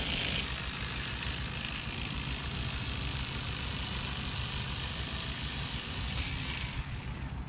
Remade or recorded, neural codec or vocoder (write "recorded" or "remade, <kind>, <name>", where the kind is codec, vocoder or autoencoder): recorded